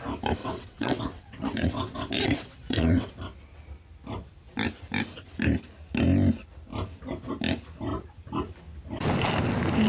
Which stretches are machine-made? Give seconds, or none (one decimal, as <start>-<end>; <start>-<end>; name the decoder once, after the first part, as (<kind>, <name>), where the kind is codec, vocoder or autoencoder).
0.4-3.1 (vocoder, WaveNeXt)